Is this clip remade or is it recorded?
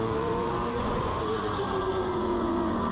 remade